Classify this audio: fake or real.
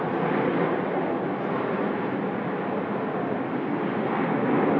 real